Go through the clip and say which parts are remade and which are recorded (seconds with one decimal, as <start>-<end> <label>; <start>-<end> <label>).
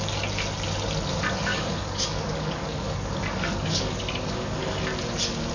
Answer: 0.0-1.5 recorded; 1.5-4.8 remade; 4.8-5.5 recorded